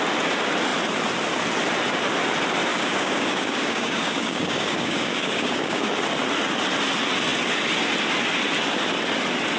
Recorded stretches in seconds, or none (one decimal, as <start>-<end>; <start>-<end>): 0.0-2.7; 5.9-9.6